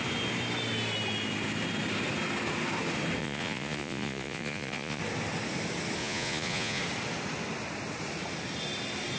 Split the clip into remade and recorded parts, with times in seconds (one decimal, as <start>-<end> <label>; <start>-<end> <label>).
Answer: 0.0-3.2 recorded; 3.2-5.0 remade; 5.0-6.0 recorded; 6.0-6.8 remade; 6.8-9.2 recorded